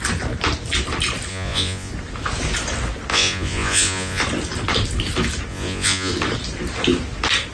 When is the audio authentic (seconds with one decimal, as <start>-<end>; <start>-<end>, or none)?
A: 0.0-1.3; 1.9-3.1; 4.2-5.5; 6.1-7.5